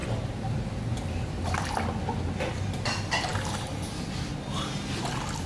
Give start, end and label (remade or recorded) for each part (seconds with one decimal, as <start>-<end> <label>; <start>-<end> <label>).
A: 0.0-5.5 recorded